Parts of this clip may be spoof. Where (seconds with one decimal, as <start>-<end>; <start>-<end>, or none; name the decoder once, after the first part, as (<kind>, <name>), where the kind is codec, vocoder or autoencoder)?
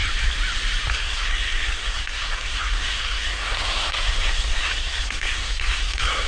0.9-6.3 (codec, SNAC)